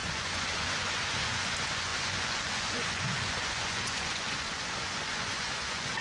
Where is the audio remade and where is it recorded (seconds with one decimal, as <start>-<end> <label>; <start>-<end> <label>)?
0.0-6.0 remade